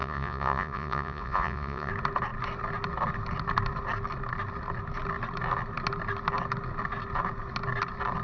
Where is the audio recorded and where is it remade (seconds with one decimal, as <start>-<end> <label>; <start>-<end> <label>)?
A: 0.0-1.9 remade; 1.9-8.2 recorded